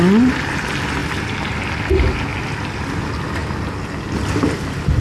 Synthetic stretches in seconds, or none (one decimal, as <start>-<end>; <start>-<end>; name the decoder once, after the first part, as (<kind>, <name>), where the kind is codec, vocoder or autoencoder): none